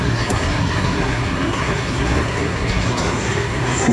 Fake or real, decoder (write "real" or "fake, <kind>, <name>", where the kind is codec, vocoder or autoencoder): fake, codec, SNAC